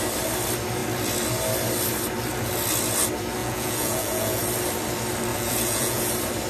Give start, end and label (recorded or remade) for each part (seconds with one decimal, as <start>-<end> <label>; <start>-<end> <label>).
0.0-3.4 recorded; 3.4-4.4 remade; 4.4-5.3 recorded; 5.3-6.0 remade; 6.0-6.5 recorded